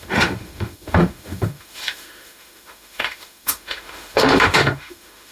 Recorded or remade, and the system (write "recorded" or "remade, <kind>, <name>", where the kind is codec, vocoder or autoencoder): remade, autoencoder, DAC-VAE